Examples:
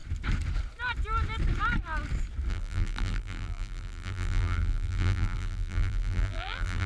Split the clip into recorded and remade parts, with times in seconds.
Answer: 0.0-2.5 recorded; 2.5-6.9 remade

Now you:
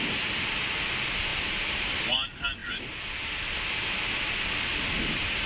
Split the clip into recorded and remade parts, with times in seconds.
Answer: 0.0-1.3 recorded; 1.3-2.0 remade; 2.0-5.5 recorded

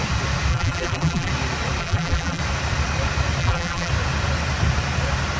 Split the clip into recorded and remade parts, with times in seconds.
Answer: 0.0-0.5 recorded; 0.5-1.3 remade; 1.3-1.8 recorded; 1.8-2.4 remade; 2.4-3.4 recorded; 3.4-3.9 remade; 3.9-5.4 recorded